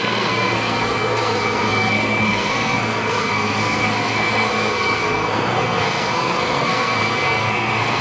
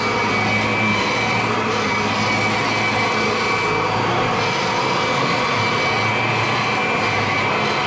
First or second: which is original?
second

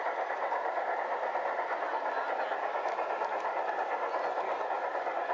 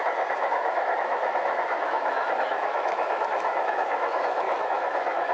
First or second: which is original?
first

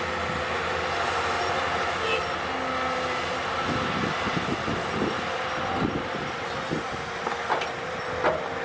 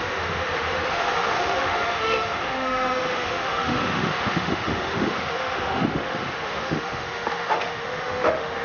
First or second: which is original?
first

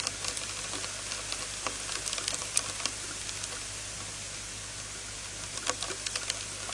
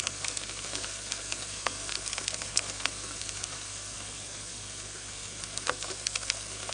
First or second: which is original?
first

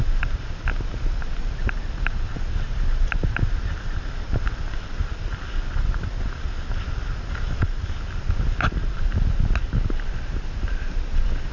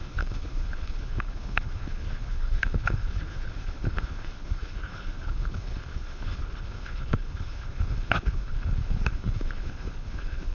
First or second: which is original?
first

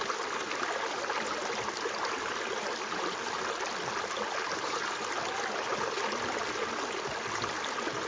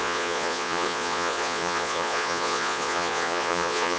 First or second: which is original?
first